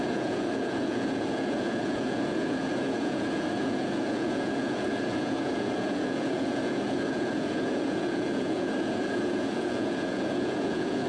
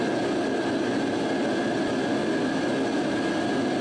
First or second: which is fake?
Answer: first